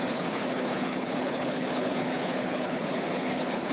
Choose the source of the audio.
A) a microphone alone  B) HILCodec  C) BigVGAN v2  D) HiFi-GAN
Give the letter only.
B